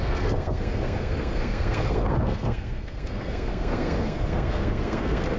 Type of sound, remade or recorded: remade